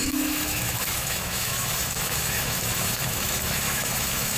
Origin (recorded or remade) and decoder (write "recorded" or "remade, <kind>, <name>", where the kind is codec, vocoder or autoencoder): remade, autoencoder, DAC-VAE